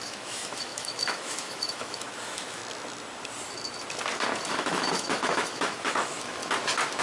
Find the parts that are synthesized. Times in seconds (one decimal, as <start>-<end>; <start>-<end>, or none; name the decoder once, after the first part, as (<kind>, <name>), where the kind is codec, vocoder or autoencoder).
0.0-2.6 (autoencoder, DAC-VAE); 4.5-6.4